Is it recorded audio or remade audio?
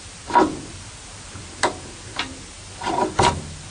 recorded